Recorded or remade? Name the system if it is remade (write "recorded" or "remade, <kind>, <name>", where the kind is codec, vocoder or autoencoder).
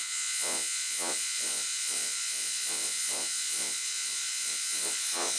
remade, vocoder, Vocos